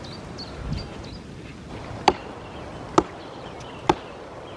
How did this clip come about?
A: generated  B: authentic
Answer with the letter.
B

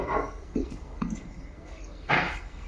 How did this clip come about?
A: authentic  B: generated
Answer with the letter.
B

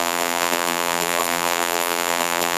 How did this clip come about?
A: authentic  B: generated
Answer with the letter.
B